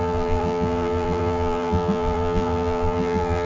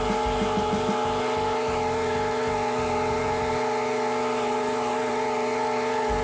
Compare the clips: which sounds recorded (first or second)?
second